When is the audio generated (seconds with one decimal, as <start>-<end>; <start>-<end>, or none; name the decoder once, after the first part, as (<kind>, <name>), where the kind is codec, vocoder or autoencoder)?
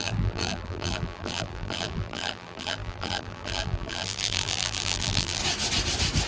0.0-5.4 (vocoder, BigVGAN v2)